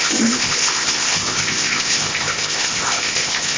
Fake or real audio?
fake